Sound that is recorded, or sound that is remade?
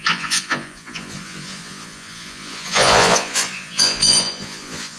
remade